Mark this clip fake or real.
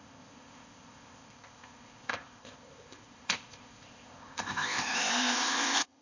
fake